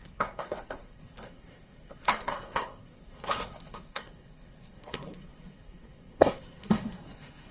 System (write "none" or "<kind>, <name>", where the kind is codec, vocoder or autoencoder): codec, SNAC